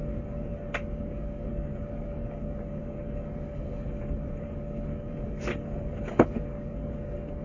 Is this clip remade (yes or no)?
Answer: yes